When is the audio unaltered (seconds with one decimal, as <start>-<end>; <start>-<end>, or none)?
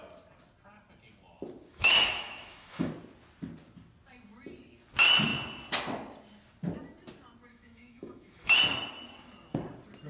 0.0-1.7; 2.9-7.5; 8.6-10.1